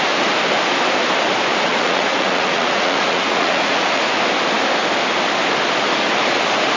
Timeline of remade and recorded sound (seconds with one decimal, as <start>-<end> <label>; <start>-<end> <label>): 0.0-1.7 recorded; 1.7-4.0 remade; 4.0-6.8 recorded